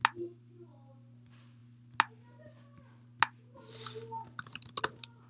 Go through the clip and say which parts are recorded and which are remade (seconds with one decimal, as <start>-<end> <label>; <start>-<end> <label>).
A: 0.0-5.3 recorded